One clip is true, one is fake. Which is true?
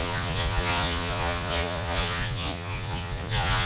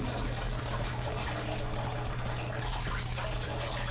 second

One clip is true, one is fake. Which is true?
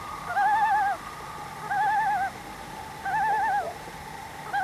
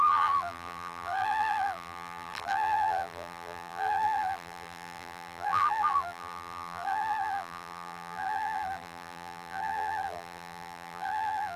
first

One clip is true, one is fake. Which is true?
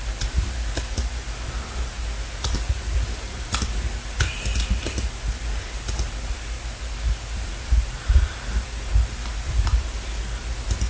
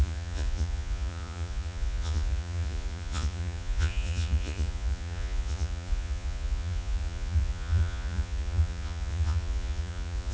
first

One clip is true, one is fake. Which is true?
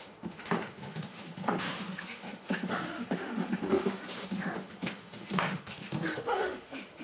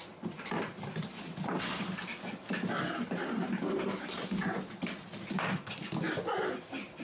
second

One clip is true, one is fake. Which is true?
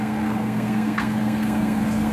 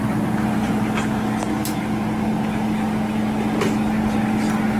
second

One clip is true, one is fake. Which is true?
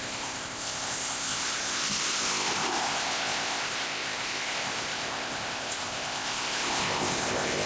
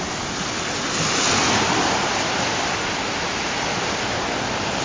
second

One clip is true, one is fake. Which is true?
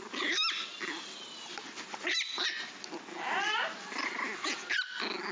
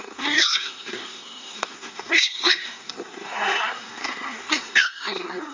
first